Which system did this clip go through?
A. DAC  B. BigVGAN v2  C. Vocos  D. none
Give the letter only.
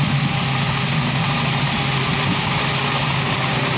D